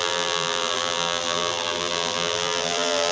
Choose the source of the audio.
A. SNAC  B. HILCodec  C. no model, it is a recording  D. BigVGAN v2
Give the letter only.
D